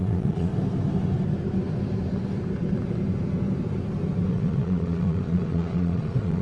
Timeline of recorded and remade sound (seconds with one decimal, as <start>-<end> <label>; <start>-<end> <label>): 0.0-0.5 remade; 0.5-4.3 recorded; 4.3-6.4 remade